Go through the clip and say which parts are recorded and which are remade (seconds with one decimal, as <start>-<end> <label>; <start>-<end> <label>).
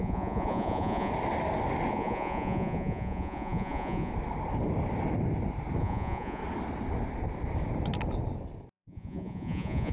0.0-1.1 remade; 1.1-1.9 recorded; 1.9-4.1 remade; 4.1-5.8 recorded; 5.8-6.4 remade; 6.4-8.7 recorded; 8.7-9.9 remade